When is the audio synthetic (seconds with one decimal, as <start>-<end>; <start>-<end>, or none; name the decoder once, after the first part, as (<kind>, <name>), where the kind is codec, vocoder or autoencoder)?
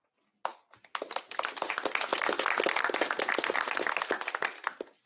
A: none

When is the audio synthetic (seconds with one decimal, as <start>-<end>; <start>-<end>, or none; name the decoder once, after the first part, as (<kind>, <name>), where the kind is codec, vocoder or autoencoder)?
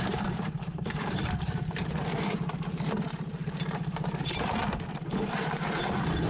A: 0.0-4.6 (vocoder, BigVGAN v2); 5.4-6.3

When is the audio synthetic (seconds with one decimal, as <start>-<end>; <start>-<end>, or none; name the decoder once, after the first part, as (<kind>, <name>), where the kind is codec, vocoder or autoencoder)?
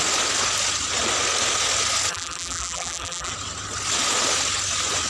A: 2.1-3.3 (vocoder, BigVGAN v2)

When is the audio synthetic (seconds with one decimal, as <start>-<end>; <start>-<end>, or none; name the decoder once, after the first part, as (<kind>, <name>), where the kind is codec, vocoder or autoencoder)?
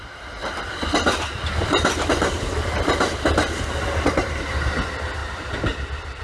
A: 0.4-4.1 (vocoder, BigVGAN v2); 5.2-6.2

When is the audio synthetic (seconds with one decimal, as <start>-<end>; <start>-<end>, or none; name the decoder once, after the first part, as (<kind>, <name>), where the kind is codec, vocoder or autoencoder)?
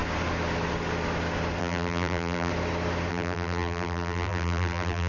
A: 1.6-2.5 (vocoder, BigVGAN v2); 3.1-5.1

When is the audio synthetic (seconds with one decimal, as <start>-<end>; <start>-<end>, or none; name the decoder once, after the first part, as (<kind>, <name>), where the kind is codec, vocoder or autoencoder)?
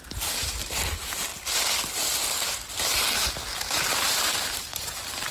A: 0.0-1.3 (vocoder, BigVGAN v2); 3.6-5.3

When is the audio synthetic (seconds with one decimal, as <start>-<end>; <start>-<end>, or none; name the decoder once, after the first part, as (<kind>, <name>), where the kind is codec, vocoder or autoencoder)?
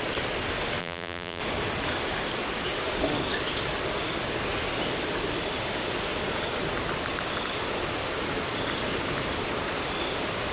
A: 0.8-1.4 (vocoder, BigVGAN v2)